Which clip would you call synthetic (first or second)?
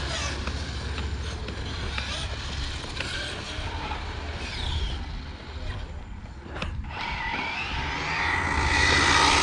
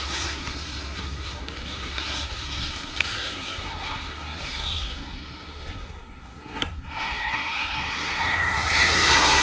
second